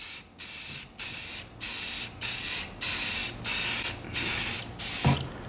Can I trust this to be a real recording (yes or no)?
yes